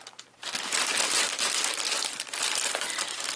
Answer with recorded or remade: recorded